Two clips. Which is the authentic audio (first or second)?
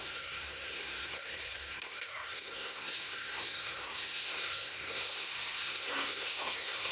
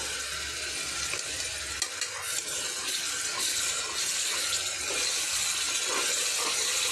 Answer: second